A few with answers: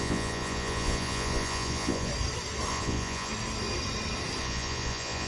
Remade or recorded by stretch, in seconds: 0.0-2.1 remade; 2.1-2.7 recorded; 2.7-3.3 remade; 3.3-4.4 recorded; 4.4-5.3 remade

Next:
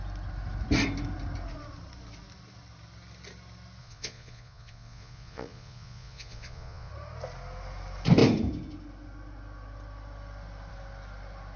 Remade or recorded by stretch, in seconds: 0.0-3.8 recorded; 3.8-6.9 remade; 6.9-11.6 recorded

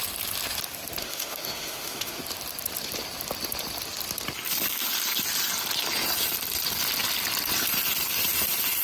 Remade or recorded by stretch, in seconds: 0.0-1.0 recorded; 1.0-2.2 remade; 2.2-8.8 recorded

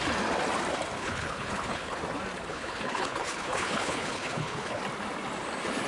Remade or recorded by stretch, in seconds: 0.0-1.0 recorded; 1.0-2.0 remade; 2.0-2.5 recorded; 2.5-4.8 remade; 4.8-5.9 recorded

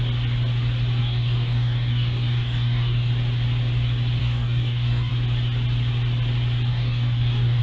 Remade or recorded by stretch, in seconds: 0.0-1.0 recorded; 1.0-3.1 remade; 3.1-4.2 recorded; 4.2-5.1 remade; 5.1-6.7 recorded; 6.7-7.6 remade

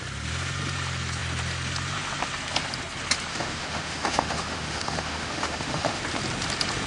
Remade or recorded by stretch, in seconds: 0.0-3.3 recorded; 3.3-6.0 remade; 6.0-6.9 recorded

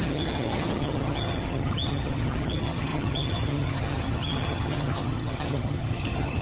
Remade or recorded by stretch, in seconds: 0.0-6.4 remade